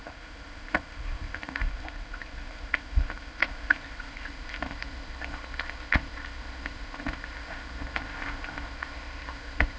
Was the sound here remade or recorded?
remade